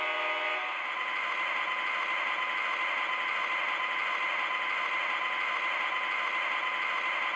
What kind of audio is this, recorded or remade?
recorded